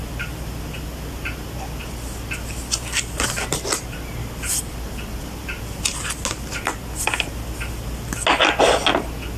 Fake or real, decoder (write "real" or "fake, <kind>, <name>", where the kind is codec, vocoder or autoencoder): real